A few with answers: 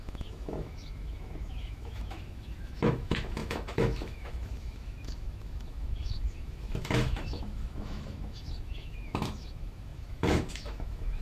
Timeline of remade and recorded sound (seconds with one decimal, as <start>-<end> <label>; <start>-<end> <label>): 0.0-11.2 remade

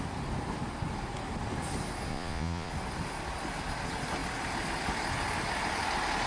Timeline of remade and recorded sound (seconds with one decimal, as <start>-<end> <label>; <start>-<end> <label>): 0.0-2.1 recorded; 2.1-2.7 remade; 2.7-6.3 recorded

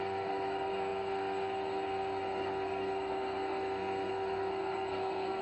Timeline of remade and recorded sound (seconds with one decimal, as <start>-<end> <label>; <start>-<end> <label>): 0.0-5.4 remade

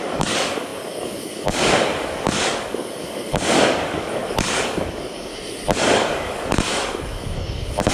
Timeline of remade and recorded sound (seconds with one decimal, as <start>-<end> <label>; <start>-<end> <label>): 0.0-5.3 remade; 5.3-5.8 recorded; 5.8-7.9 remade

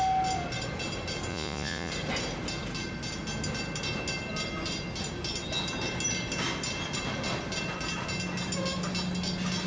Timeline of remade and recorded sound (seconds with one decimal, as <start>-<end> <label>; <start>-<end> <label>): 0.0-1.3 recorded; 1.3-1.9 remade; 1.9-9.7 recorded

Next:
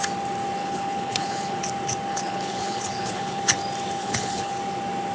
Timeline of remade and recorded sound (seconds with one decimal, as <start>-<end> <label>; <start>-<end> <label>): 0.0-0.6 recorded; 0.6-1.6 remade; 1.6-2.1 recorded; 2.1-3.4 remade; 3.4-4.0 recorded; 4.0-4.6 remade; 4.6-5.1 recorded

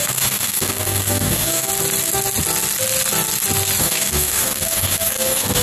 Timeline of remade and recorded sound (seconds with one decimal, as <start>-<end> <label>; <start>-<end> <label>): 0.0-1.7 remade; 1.7-3.8 recorded; 3.8-5.6 remade

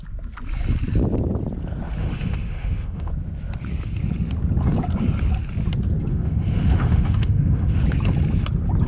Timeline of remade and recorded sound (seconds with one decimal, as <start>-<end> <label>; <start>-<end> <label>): 0.0-2.0 recorded; 2.0-3.1 remade; 3.1-6.1 recorded; 6.1-7.8 remade; 7.8-8.9 recorded